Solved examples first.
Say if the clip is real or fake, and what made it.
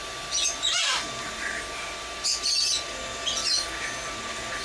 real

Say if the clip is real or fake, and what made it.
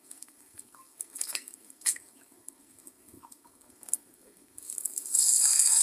fake, codec, SNAC